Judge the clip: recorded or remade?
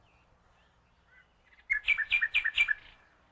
recorded